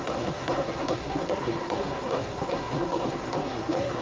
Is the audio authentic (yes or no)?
no